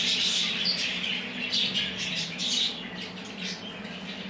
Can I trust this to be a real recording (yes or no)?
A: yes